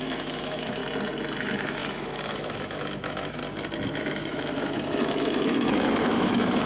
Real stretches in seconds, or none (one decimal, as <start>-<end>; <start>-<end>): 0.8-1.4; 3.4-3.9